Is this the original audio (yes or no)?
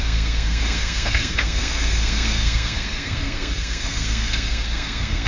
no